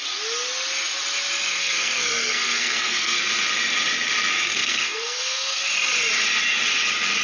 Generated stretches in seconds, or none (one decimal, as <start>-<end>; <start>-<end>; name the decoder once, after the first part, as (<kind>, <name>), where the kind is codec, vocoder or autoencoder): 1.6-3.3 (codec, SNAC); 4.5-5.7